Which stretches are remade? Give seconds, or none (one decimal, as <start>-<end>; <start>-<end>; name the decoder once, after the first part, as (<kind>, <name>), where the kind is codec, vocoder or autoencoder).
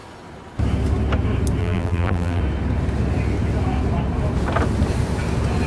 1.6-2.4 (vocoder, BigVGAN v2)